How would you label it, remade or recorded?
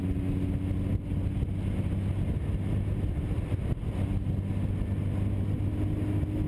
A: recorded